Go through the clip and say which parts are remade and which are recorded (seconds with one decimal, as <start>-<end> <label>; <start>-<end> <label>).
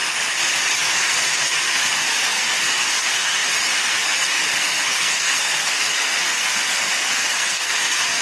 0.0-0.8 recorded; 0.8-8.2 remade